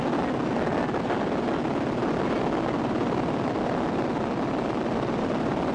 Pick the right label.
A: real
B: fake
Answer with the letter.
A